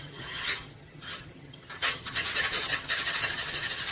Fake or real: fake